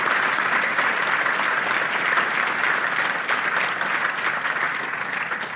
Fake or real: real